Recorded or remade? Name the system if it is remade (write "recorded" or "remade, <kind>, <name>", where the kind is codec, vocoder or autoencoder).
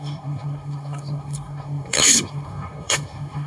remade, codec, SNAC